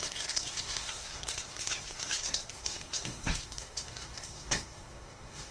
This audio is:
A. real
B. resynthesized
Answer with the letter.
B